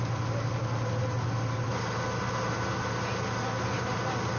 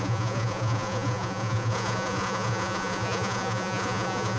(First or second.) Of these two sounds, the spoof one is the second